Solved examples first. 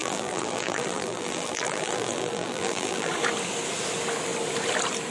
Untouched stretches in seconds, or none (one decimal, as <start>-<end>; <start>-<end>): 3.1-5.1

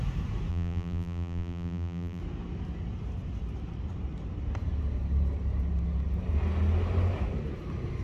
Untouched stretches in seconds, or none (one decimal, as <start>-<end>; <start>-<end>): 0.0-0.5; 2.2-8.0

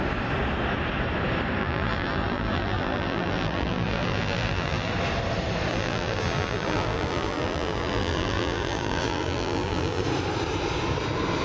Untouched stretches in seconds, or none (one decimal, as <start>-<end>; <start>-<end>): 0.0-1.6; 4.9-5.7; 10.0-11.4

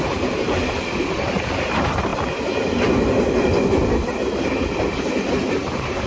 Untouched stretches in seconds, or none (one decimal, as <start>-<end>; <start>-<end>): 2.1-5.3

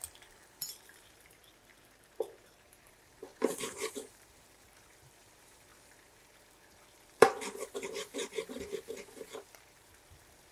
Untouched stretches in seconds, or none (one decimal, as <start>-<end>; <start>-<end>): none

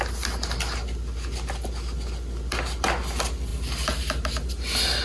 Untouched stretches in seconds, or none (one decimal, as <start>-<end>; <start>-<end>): 0.0-5.0

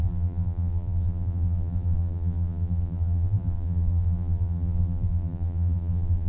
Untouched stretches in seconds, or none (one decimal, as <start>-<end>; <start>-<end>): none

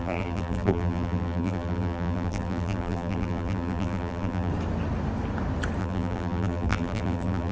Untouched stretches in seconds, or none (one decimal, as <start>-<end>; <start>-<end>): 4.5-5.8